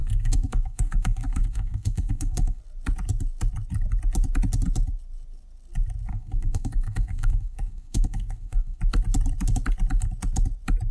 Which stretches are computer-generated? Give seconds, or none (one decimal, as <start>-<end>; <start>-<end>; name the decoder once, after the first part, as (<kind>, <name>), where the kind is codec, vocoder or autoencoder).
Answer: 0.0-2.6 (codec, SNAC); 6.1-8.8